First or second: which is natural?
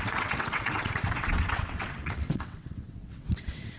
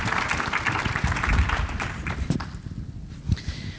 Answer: second